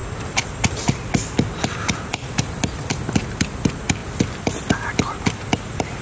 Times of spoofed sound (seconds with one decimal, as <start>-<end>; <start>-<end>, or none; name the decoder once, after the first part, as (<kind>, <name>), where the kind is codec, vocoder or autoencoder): none